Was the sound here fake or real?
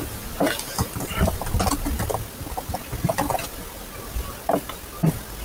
real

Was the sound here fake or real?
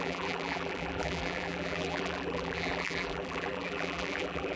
fake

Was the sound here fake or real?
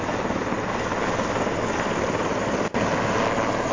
real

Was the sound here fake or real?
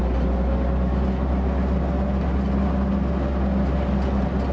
real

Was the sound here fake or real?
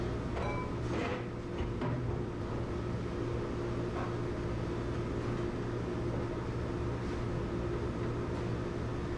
real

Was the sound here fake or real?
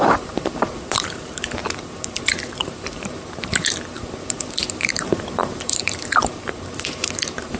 fake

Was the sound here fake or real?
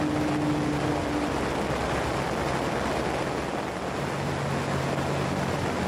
real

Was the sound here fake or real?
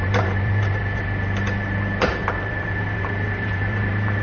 fake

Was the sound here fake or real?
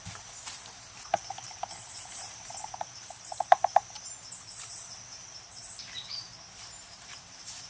fake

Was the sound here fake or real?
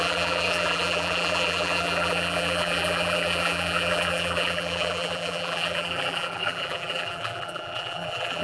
fake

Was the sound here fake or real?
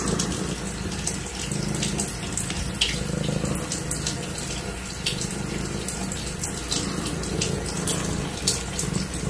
real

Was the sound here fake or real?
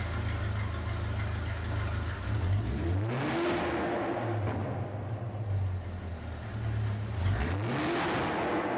real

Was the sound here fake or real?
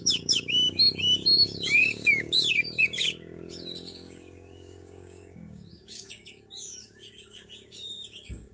fake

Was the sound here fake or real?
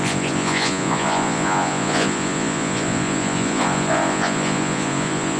fake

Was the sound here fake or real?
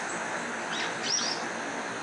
real